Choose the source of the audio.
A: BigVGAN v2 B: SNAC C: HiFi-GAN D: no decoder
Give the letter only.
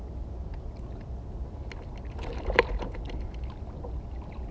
D